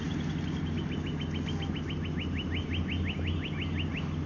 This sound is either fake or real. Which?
real